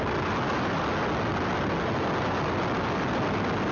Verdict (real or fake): real